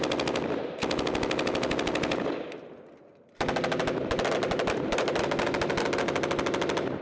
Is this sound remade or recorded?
recorded